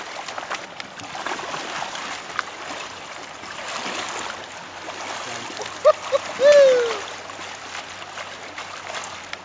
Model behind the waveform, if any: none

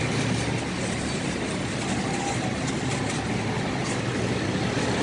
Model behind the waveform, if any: none